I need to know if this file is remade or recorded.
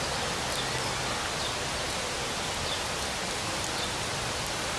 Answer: recorded